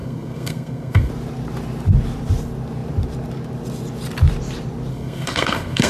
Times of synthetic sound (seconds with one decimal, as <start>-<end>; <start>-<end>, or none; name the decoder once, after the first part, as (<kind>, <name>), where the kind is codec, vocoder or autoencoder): 0.0-1.1 (codec, SNAC); 4.9-5.9